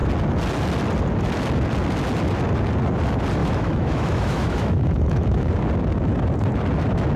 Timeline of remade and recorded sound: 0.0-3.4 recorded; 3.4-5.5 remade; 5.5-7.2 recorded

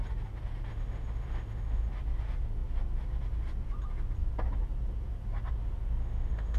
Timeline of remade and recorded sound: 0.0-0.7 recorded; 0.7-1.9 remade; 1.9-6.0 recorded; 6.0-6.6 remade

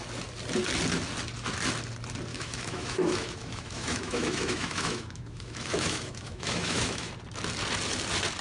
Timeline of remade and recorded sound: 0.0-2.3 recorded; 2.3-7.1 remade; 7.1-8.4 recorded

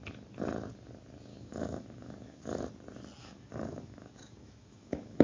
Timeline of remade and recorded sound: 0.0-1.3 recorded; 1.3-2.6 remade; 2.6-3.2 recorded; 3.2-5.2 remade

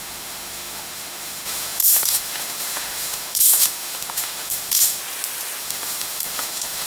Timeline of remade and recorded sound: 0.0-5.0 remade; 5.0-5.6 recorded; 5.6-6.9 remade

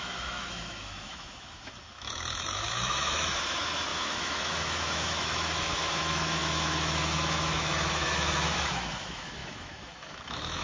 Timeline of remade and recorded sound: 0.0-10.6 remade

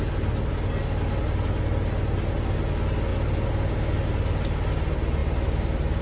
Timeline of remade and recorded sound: 0.0-6.0 recorded